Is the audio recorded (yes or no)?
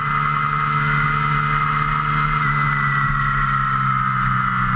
yes